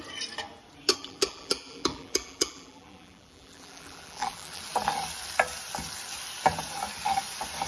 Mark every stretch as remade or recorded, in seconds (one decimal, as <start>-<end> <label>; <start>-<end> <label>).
0.0-1.0 recorded; 1.0-4.6 remade; 4.6-7.7 recorded

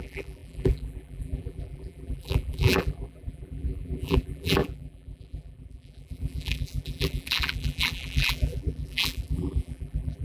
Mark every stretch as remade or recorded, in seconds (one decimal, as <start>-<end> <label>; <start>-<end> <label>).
0.0-10.2 remade